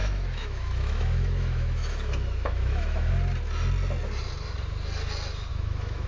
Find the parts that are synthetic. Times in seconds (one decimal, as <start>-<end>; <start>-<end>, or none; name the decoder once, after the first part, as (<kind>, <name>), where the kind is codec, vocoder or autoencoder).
0.0-3.1 (autoencoder, DAC-VAE); 5.5-6.1

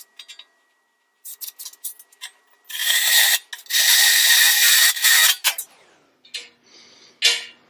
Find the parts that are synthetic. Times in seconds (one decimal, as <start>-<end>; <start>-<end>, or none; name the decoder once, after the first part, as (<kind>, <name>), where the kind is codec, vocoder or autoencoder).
none

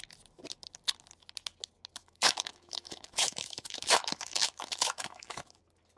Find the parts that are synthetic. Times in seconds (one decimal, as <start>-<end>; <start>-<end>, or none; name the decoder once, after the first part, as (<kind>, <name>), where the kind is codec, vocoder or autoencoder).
2.0-5.6 (autoencoder, DAC-VAE)

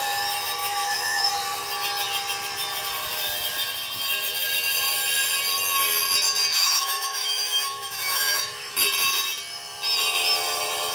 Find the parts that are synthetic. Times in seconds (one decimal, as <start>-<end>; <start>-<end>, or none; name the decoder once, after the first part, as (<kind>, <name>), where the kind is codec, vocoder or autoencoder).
0.6-1.3 (autoencoder, DAC-VAE); 6.5-8.7

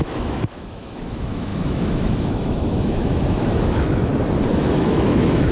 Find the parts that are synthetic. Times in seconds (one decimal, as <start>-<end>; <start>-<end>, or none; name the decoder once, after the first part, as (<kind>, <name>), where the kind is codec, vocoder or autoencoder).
0.0-4.1 (autoencoder, DAC-VAE); 4.6-5.5

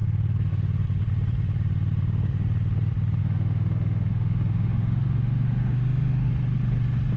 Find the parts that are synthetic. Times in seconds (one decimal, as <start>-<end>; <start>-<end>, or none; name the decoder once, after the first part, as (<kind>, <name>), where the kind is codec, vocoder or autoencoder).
3.2-6.3 (autoencoder, DAC-VAE)